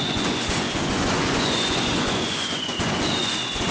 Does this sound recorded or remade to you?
remade